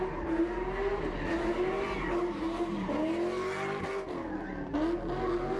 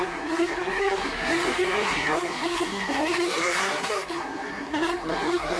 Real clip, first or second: first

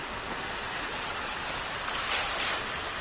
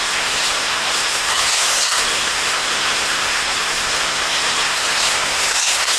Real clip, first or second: first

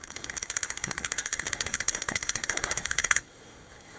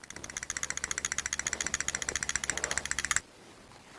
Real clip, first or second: second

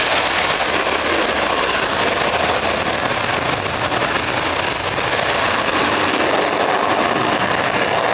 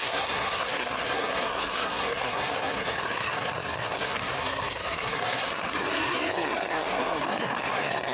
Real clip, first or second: first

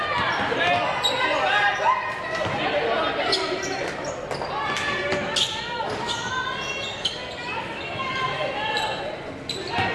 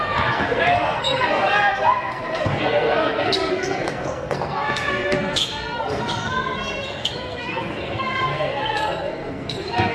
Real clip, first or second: first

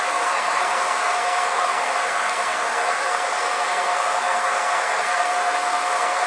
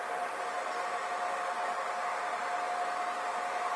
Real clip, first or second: second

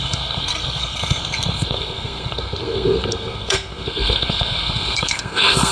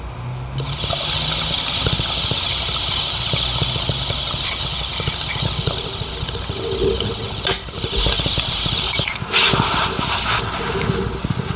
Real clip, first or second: second